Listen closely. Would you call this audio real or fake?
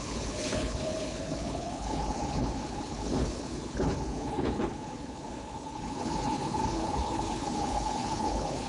fake